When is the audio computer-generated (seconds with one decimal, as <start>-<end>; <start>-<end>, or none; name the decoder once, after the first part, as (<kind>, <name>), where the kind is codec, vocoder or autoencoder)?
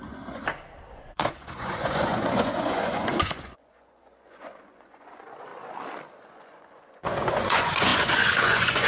0.0-0.4 (vocoder, Vocos); 0.9-5.5; 6.3-8.9